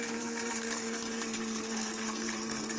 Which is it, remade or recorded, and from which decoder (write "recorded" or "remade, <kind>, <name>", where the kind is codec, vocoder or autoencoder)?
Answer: remade, codec, SNAC